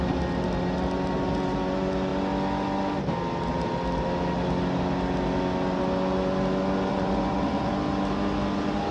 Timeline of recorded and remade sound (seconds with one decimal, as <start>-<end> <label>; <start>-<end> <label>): 0.0-6.9 recorded; 6.9-7.7 remade; 7.7-8.9 recorded